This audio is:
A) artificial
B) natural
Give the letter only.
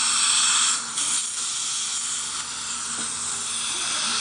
B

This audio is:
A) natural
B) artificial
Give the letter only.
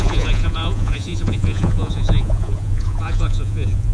B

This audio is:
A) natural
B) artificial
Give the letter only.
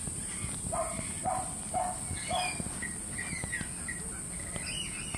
A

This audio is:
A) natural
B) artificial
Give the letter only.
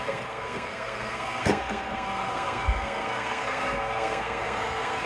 B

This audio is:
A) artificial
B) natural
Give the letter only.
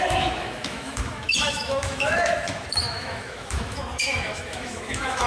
A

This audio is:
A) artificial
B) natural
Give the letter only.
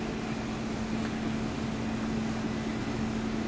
B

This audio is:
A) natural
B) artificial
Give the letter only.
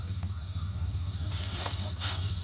B